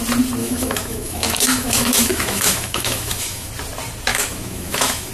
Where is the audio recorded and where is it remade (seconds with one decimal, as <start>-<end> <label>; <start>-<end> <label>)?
0.0-0.4 recorded; 0.4-3.5 remade; 3.5-4.1 recorded; 4.1-5.1 remade